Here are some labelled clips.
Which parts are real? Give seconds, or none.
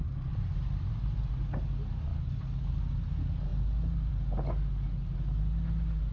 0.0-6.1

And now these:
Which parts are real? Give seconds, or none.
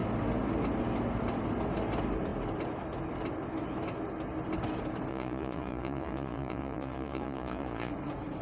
0.0-5.1; 7.9-8.4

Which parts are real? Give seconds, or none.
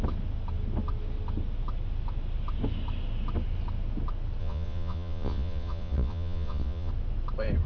0.0-4.4; 6.9-7.7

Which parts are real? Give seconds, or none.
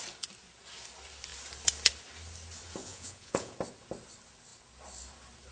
0.0-2.8; 3.5-5.5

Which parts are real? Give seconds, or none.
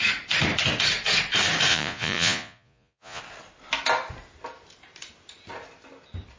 0.0-1.7; 3.2-6.4